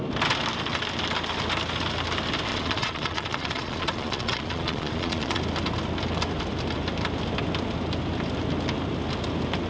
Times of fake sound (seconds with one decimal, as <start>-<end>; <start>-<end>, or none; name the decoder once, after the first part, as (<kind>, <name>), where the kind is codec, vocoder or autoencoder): 2.5-5.4 (vocoder, Vocos)